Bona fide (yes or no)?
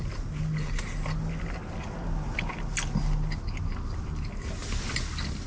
yes